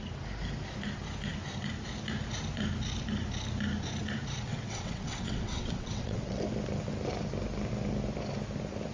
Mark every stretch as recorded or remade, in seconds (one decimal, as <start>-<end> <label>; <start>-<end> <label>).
0.0-4.5 recorded; 4.5-6.4 remade; 6.4-8.9 recorded